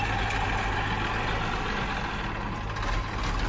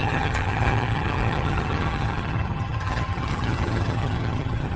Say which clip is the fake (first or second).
second